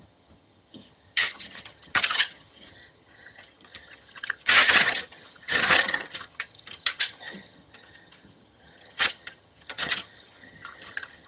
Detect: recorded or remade remade